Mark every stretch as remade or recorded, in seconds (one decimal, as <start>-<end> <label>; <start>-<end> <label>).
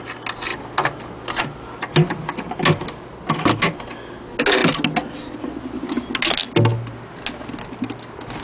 0.0-8.4 recorded